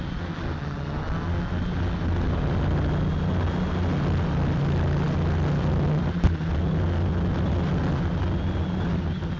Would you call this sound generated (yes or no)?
no